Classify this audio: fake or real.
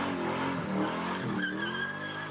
real